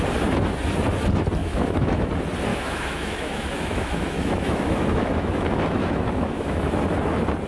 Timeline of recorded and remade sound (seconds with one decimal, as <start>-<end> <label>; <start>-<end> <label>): 0.0-1.4 recorded; 1.4-2.1 remade; 2.1-2.5 recorded; 2.5-6.7 remade; 6.7-7.5 recorded